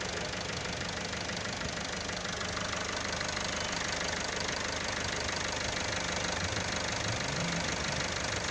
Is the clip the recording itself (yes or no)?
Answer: yes